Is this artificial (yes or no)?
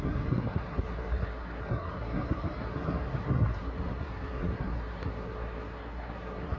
yes